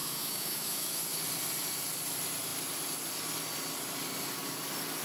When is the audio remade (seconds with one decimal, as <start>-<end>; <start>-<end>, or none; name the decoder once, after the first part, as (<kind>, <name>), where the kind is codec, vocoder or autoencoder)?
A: 0.0-1.2 (autoencoder, DAC-VAE)